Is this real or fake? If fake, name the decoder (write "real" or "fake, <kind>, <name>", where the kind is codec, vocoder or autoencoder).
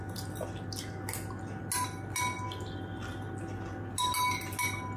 real